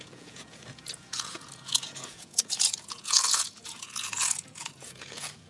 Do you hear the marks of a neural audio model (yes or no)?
yes